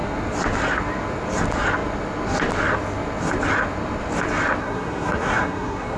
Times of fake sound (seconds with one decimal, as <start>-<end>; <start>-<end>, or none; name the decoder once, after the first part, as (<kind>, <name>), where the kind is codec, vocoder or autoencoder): 4.6-6.0 (codec, SNAC)